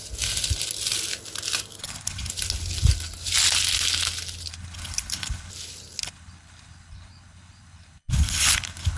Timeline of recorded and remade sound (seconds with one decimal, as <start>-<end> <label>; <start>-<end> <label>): 0.0-1.8 recorded; 1.8-2.3 remade; 2.3-4.5 recorded; 4.5-5.5 remade; 5.5-6.0 recorded; 6.0-9.0 remade